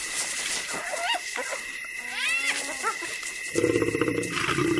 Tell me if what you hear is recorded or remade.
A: recorded